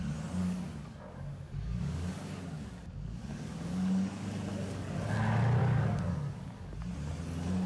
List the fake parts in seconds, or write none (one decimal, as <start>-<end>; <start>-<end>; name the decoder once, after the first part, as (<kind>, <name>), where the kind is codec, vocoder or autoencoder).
0.4-5.0 (codec, DAC); 5.6-6.8